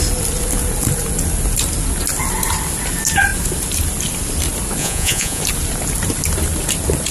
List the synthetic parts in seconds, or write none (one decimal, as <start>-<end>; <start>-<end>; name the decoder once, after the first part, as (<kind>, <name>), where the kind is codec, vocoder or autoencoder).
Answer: 4.8-5.4 (vocoder, Vocos)